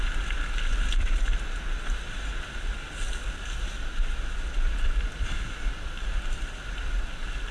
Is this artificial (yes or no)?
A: no